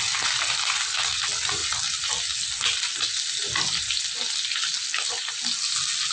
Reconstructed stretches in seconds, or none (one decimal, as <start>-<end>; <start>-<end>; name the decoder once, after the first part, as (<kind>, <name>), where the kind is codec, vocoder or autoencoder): none